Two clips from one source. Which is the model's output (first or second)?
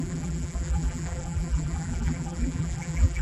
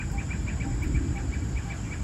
first